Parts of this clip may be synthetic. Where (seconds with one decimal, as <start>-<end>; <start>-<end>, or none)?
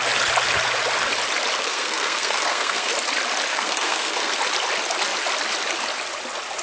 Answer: 1.6-2.9; 3.5-4.4